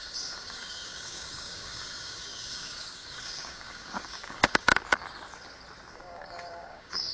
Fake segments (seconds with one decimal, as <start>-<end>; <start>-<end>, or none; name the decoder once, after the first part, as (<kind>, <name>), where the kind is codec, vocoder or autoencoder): 0.0-4.7 (codec, DAC); 5.9-7.1